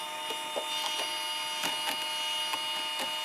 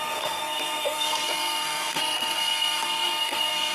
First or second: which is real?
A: first